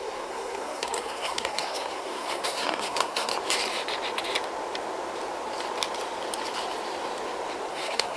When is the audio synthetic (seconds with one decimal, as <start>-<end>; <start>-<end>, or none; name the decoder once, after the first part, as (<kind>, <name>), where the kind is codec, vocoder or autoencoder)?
0.0-3.3 (codec, SNAC); 7.7-8.2